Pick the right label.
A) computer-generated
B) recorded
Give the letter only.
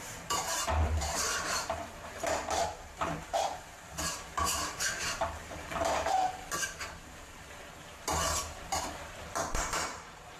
A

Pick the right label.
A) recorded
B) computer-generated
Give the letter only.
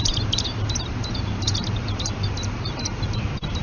B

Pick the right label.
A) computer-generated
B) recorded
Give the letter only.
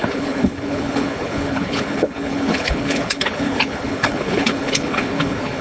A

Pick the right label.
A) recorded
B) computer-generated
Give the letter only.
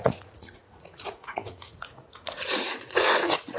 B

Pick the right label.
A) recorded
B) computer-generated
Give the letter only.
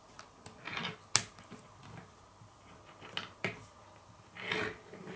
A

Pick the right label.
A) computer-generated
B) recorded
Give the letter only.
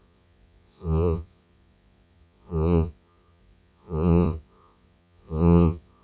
A